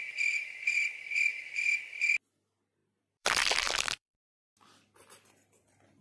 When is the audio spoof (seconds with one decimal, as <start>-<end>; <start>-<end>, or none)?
1.3-1.8; 2.8-4.5